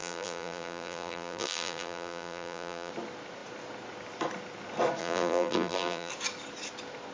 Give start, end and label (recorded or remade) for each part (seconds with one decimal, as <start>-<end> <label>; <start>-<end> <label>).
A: 0.0-2.9 remade; 2.9-5.0 recorded; 5.0-6.1 remade; 6.1-7.1 recorded